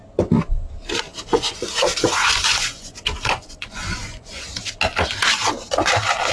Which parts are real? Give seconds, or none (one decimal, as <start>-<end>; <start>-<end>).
0.0-1.3; 4.5-6.3